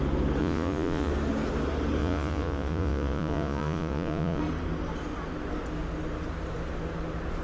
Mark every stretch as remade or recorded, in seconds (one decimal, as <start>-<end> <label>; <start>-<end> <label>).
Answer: 0.0-0.4 recorded; 0.4-1.1 remade; 1.1-2.0 recorded; 2.0-4.4 remade; 4.4-7.4 recorded